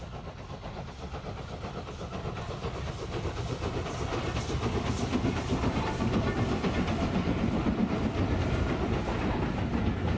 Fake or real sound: real